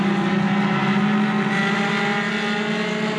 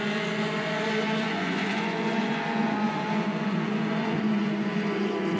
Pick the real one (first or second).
first